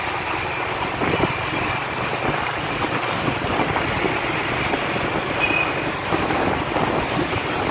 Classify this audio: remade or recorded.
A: recorded